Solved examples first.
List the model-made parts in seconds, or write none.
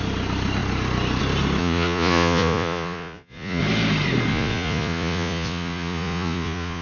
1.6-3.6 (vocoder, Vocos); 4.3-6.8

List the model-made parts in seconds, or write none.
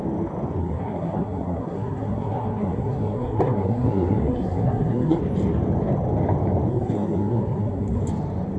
0.6-5.2 (codec, SNAC); 6.7-8.0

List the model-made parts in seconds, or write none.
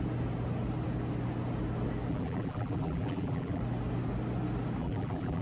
2.1-3.6 (vocoder, BigVGAN v2); 4.8-5.4